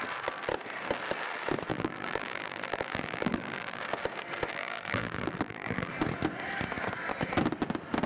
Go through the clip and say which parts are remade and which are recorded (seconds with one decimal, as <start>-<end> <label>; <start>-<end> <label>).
0.0-1.7 recorded; 1.7-3.8 remade; 3.8-4.5 recorded; 4.5-5.9 remade; 5.9-8.1 recorded